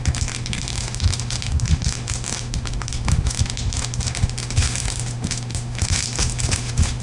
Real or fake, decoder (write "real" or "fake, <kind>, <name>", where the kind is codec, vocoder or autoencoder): fake, autoencoder, DAC-VAE